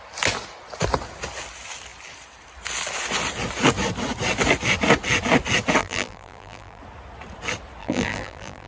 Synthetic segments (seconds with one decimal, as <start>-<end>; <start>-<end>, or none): 5.8-6.8; 7.8-8.7